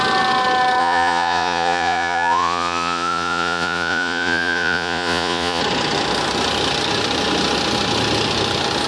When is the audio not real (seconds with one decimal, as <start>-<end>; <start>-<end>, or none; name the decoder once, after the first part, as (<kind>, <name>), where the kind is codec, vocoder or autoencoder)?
0.8-5.6 (vocoder, Vocos)